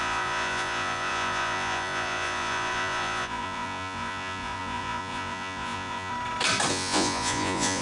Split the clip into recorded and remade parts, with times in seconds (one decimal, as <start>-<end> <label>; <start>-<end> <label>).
0.0-6.1 remade; 6.1-6.7 recorded; 6.7-7.8 remade